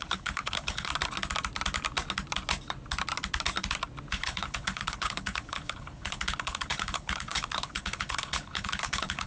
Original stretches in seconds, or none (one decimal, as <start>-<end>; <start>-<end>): 0.9-4.1